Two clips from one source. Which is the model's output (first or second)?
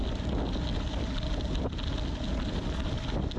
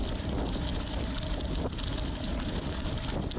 second